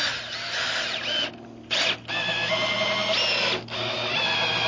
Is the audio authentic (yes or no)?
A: yes